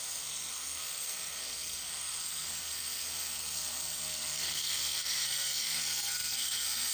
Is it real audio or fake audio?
fake